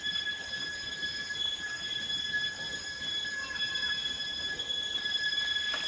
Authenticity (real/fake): real